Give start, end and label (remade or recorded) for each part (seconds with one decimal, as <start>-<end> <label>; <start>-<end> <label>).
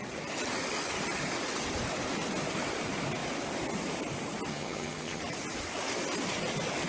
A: 0.0-4.5 recorded; 4.5-5.2 remade; 5.2-6.9 recorded